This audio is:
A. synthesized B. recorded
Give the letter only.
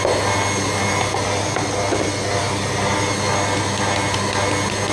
B